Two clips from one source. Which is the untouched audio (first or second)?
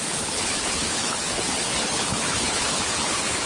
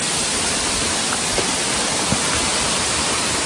second